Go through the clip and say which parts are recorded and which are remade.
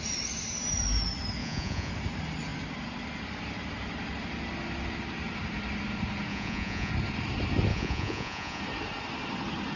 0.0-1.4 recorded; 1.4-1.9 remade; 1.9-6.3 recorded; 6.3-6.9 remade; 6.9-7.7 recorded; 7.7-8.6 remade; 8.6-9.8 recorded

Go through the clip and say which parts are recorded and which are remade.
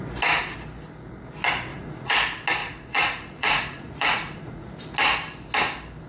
0.0-1.7 recorded; 1.7-2.2 remade; 2.2-2.6 recorded; 2.6-4.7 remade; 4.7-6.1 recorded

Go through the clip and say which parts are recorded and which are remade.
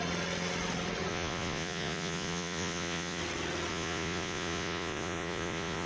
0.0-1.1 recorded; 1.1-3.2 remade; 3.2-3.7 recorded; 3.7-5.9 remade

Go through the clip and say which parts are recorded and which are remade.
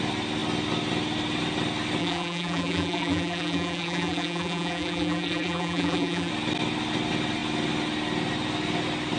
0.0-2.0 recorded; 2.0-6.3 remade; 6.3-9.2 recorded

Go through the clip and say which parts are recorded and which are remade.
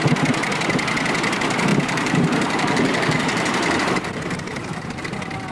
0.0-1.7 recorded; 1.7-5.0 remade; 5.0-5.5 recorded